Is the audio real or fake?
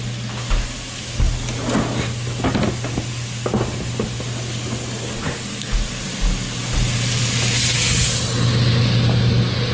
real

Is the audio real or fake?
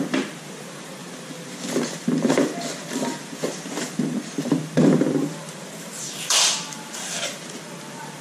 fake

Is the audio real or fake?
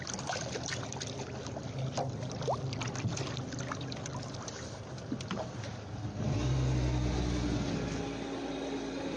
real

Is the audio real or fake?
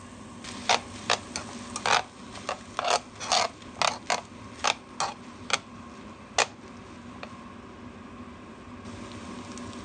real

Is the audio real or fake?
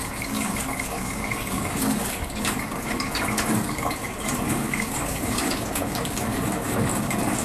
fake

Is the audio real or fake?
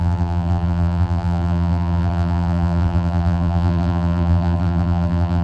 fake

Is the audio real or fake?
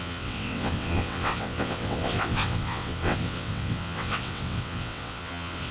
fake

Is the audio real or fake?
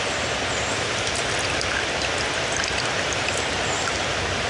real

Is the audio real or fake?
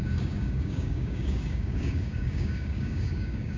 fake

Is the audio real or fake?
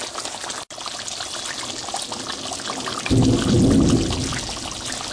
real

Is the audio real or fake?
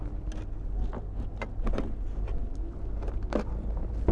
real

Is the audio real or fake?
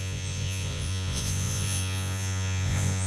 fake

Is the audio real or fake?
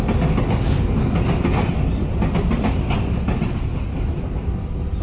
real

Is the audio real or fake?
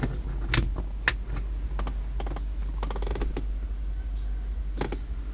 real